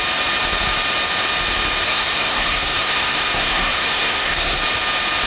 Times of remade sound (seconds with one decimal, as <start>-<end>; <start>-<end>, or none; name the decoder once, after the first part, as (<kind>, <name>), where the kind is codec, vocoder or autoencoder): 1.8-4.6 (codec, SNAC)

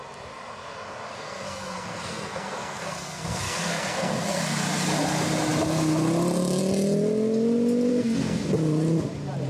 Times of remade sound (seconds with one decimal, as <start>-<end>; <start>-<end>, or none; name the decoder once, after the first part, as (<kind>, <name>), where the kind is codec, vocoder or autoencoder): 1.1-4.4 (codec, SNAC); 7.9-8.5

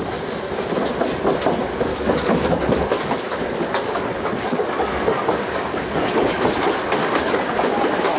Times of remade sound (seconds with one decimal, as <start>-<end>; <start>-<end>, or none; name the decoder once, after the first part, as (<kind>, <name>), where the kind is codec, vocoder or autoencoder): 1.9-6.4 (codec, DAC); 7.0-7.7